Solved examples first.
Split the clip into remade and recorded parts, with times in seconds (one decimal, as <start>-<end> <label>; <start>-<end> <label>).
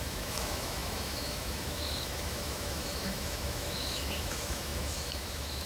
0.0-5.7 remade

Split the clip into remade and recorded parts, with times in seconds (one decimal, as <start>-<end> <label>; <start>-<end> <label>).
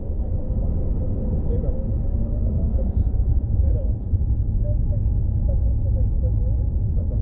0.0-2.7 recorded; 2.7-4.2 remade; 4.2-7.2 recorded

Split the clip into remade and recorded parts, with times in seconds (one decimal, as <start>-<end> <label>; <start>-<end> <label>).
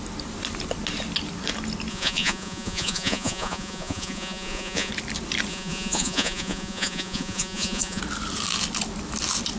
0.0-1.9 recorded; 1.9-4.9 remade; 4.9-5.5 recorded; 5.5-8.0 remade; 8.0-9.6 recorded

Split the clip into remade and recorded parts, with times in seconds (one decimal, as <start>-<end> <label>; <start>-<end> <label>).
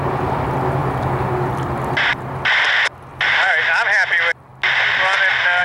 0.0-2.1 recorded; 2.1-3.5 remade; 3.5-5.6 recorded